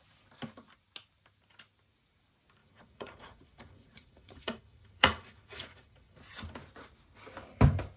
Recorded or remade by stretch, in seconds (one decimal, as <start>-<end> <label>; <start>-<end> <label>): 0.0-2.6 recorded; 2.6-6.2 remade; 6.2-8.0 recorded